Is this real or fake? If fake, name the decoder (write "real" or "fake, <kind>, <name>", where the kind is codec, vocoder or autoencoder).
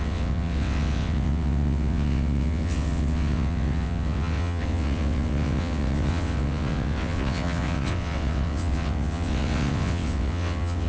fake, vocoder, WaveNeXt